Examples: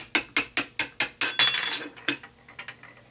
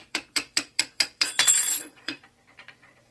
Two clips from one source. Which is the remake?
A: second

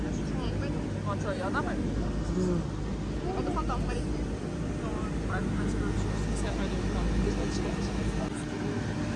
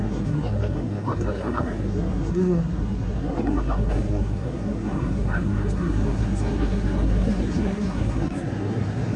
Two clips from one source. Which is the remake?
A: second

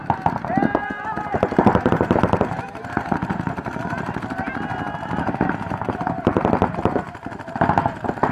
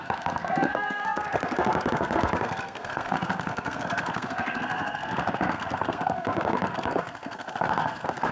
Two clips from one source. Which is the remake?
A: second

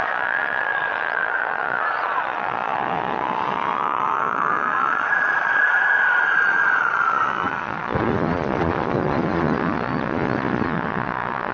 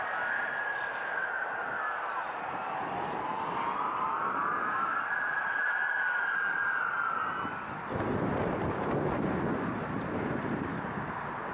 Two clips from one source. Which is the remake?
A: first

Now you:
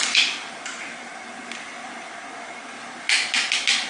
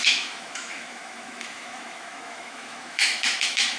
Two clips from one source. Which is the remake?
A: second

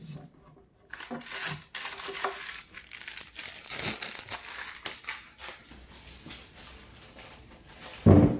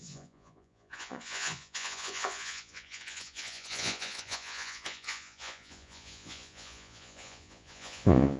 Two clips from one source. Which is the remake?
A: second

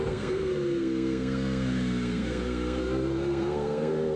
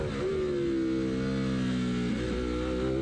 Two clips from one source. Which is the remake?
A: first